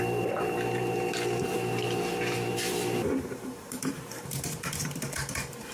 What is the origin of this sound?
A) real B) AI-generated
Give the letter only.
B